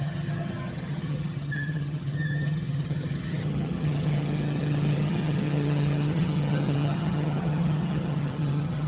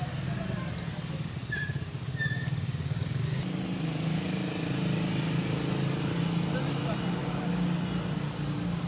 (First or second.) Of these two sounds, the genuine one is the second